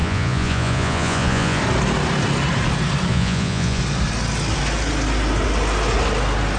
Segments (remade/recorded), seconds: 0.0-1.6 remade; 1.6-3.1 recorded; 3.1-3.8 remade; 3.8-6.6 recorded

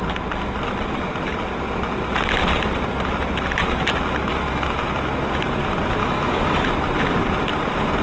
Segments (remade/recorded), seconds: 0.0-4.3 recorded; 4.3-4.8 remade; 4.8-6.0 recorded; 6.0-6.7 remade; 6.7-8.0 recorded

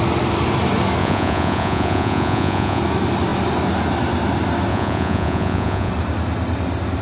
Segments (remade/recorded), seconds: 0.0-1.0 recorded; 1.0-2.8 remade; 2.8-4.7 recorded; 4.7-5.9 remade; 5.9-7.0 recorded